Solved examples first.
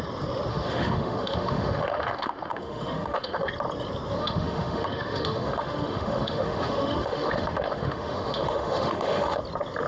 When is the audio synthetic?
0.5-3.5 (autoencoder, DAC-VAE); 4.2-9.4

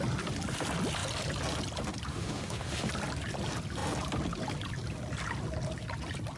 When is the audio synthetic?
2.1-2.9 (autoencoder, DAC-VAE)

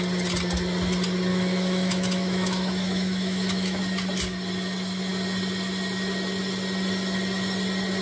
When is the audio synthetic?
1.3-3.8 (autoencoder, DAC-VAE)

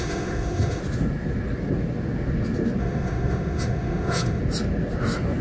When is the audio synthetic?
0.0-0.8 (autoencoder, DAC-VAE); 2.8-4.4

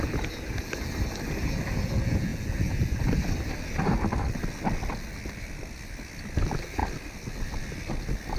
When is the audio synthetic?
none